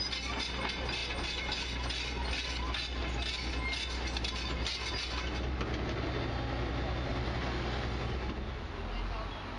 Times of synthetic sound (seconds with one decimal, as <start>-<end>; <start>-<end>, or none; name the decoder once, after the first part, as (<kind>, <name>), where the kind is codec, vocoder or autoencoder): none